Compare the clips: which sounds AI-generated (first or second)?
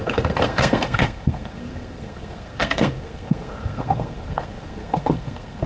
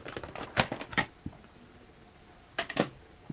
first